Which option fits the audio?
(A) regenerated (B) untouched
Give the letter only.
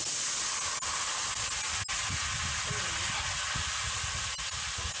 B